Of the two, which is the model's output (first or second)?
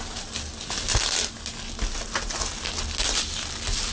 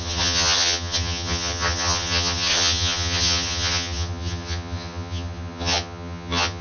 second